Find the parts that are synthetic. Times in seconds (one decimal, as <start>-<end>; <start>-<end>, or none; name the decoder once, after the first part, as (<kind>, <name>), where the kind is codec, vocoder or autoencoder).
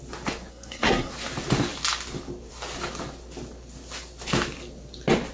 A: 0.5-1.1 (codec, SNAC)